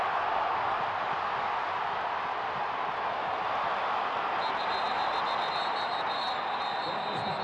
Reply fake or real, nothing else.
real